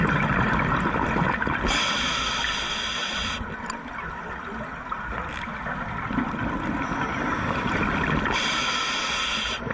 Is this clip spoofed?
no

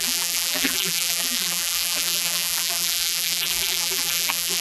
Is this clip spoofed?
yes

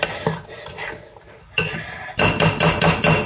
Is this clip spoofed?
no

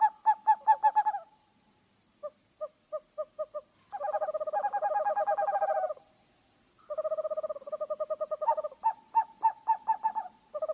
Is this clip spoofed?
no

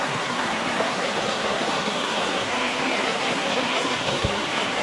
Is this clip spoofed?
yes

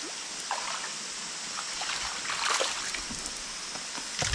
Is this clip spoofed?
no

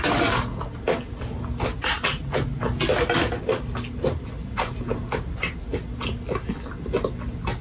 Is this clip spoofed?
no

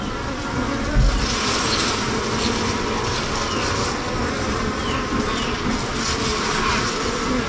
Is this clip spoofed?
no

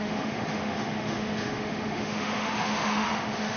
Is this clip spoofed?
yes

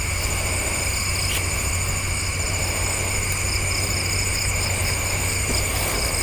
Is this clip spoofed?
no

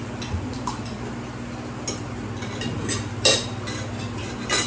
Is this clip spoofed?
no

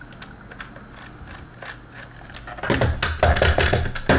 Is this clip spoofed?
no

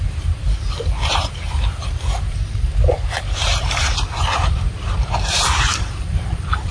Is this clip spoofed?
yes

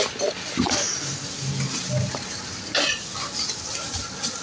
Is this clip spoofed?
no